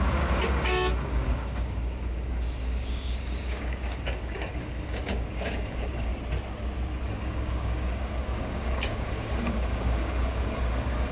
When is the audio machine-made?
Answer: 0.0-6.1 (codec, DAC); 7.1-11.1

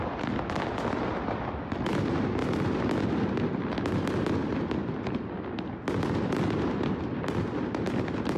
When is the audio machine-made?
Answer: none